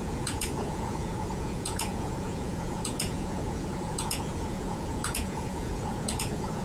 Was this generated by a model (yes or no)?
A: yes